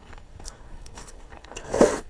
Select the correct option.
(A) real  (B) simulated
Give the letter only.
B